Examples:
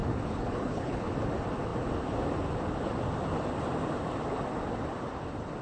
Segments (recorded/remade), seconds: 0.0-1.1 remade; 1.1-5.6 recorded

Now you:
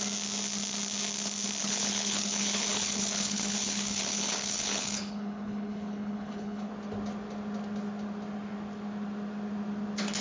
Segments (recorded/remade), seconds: 0.0-1.6 recorded; 1.6-6.7 remade; 6.7-10.2 recorded

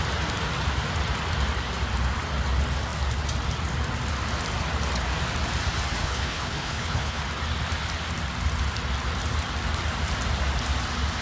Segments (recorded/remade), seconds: 0.0-6.0 recorded; 6.0-7.2 remade; 7.2-11.2 recorded

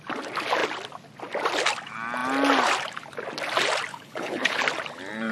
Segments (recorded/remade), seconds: 0.0-3.9 recorded; 3.9-4.6 remade; 4.6-5.3 recorded

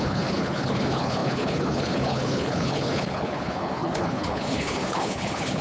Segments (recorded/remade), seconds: 0.0-5.6 remade

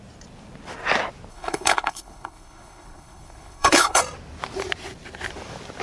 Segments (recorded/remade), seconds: 0.0-1.3 recorded; 1.3-4.0 remade; 4.0-5.8 recorded